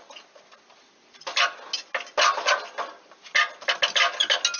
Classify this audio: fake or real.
real